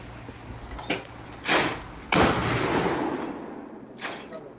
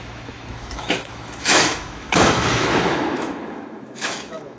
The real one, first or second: first